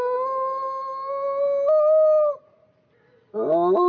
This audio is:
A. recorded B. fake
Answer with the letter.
A